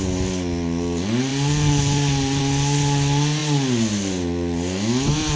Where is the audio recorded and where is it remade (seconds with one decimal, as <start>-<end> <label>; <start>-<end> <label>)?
0.0-5.4 recorded